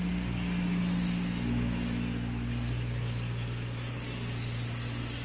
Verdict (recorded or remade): recorded